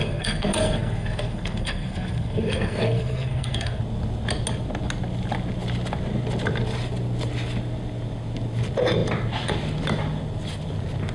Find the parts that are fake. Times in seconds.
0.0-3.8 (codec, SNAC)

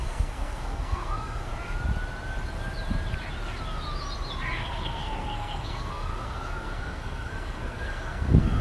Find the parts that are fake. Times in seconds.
0.0-1.5 (codec, SNAC); 4.6-8.6

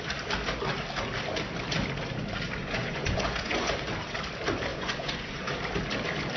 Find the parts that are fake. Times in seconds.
2.6-3.7 (vocoder, Vocos); 4.7-5.6

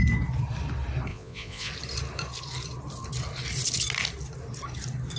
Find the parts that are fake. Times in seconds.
1.1-1.7 (vocoder, Vocos)

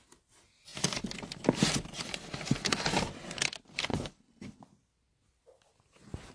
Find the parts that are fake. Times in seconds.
3.9-4.6 (codec, HILCodec)